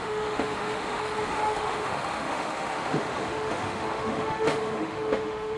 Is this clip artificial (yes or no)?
yes